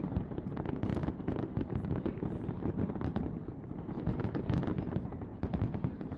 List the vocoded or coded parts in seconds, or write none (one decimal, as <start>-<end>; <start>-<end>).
0.0-5.3